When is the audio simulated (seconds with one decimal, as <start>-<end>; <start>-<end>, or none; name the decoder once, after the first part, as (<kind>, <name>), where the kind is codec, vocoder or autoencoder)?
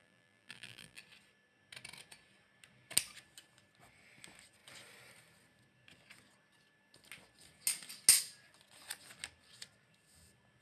0.0-1.0 (vocoder, BigVGAN v2)